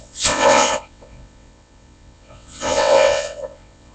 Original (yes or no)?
no